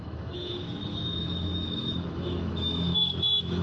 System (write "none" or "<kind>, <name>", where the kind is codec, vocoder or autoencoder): autoencoder, DAC-VAE